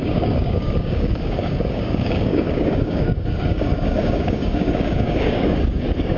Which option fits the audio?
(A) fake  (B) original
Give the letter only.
A